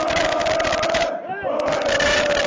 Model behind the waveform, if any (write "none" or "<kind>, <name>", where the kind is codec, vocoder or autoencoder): none